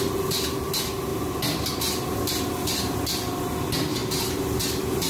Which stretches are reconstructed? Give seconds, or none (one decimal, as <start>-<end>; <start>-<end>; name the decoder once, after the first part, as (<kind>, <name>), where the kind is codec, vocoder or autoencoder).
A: none